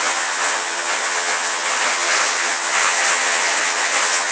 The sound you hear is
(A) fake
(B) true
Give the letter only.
A